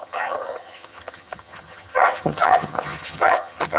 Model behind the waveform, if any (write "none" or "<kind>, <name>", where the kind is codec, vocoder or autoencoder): vocoder, HiFi-GAN